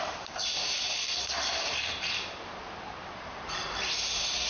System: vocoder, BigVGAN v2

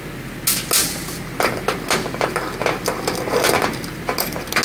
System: none